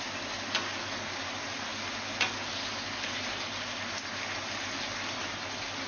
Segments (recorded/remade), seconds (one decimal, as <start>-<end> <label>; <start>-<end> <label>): 0.0-5.9 recorded